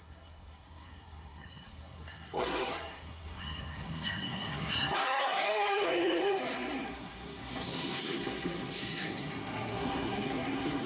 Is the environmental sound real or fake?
fake